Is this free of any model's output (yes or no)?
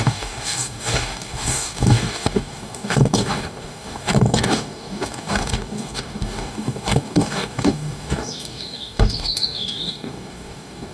no